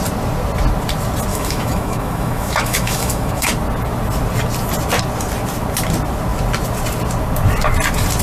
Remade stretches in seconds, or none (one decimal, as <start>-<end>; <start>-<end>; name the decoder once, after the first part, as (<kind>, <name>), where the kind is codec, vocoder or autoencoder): 1.3-3.5 (autoencoder, DAC-VAE)